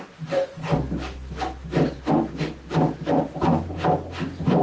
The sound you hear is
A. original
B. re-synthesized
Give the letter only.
A